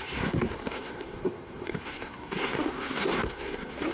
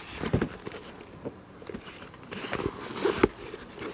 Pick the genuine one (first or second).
second